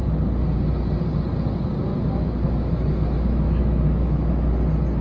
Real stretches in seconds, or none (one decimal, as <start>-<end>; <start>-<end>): 0.0-1.9; 4.5-5.0